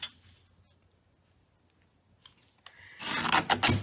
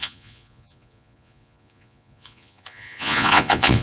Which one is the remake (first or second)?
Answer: second